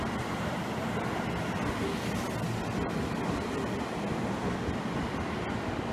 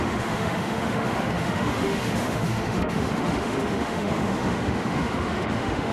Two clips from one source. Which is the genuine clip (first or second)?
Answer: first